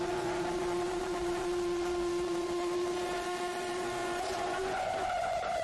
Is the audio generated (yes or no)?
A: yes